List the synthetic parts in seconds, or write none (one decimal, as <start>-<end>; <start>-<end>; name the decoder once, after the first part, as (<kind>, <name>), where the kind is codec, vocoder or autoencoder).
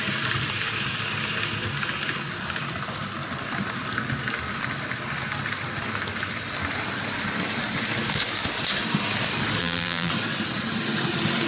9.6-10.1 (vocoder, BigVGAN v2)